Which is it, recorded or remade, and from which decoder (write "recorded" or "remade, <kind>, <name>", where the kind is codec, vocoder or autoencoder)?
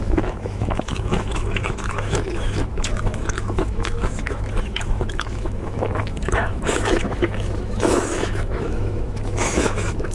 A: remade, autoencoder, DAC-VAE